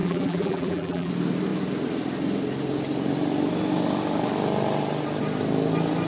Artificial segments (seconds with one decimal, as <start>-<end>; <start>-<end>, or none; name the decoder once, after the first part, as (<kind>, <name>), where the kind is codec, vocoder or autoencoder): 0.0-1.1 (vocoder, BigVGAN v2)